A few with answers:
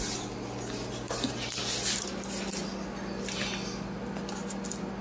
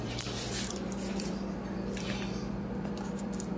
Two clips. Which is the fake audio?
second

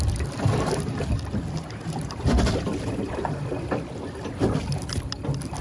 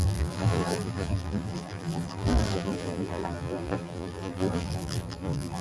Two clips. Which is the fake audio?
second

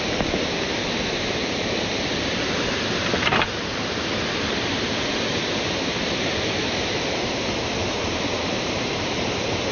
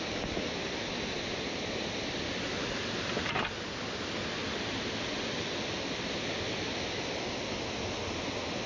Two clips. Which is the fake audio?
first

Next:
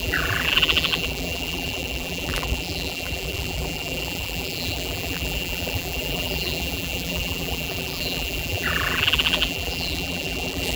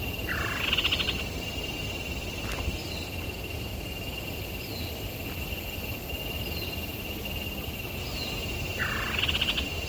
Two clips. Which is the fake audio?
first